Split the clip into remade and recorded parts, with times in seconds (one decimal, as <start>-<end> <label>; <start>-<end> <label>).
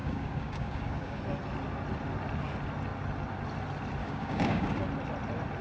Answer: 0.0-1.2 remade; 1.2-4.0 recorded; 4.0-4.7 remade; 4.7-5.6 recorded